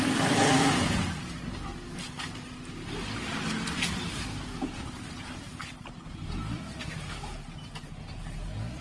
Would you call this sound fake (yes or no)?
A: no